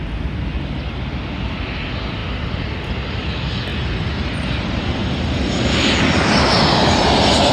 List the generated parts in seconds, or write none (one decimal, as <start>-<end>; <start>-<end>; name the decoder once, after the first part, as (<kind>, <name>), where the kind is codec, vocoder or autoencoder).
none